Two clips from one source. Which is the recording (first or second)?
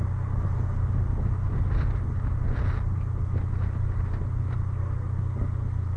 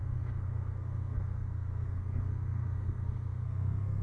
first